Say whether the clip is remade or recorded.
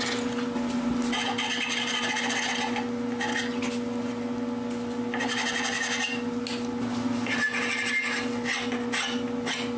recorded